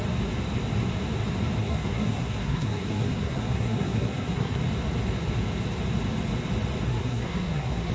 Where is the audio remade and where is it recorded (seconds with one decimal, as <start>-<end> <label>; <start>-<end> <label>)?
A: 0.0-1.6 recorded; 1.6-4.6 remade; 4.6-6.9 recorded; 6.9-7.9 remade